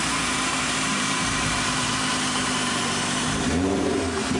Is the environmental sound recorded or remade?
remade